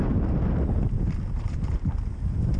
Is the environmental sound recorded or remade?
recorded